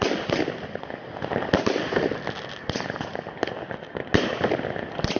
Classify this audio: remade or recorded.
recorded